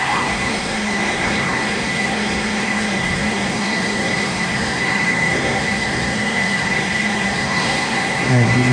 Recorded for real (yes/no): no